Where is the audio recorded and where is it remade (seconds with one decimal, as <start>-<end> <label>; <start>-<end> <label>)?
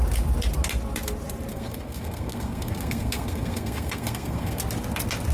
0.0-1.5 recorded; 1.5-4.6 remade; 4.6-5.3 recorded